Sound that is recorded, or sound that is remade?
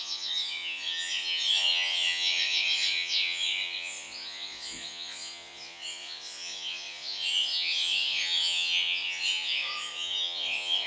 remade